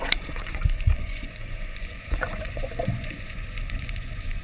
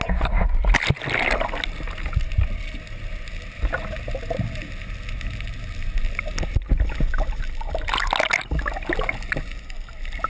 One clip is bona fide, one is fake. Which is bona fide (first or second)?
second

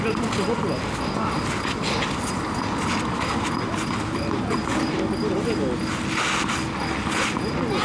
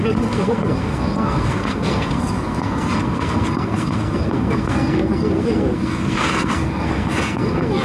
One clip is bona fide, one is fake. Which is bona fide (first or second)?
first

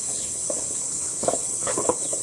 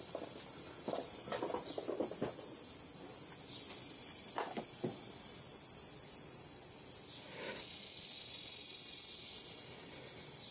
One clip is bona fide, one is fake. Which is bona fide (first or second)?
second